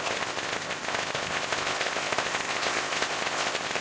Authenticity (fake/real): fake